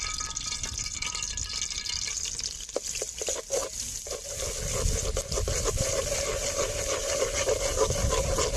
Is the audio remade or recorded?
recorded